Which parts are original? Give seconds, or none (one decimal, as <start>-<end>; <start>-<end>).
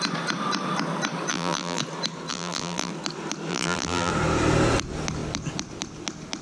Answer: 0.0-1.3; 1.8-2.3; 2.9-3.5; 4.1-6.4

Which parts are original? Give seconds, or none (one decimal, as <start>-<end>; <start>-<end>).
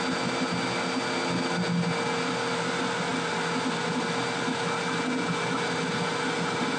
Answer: 0.0-6.8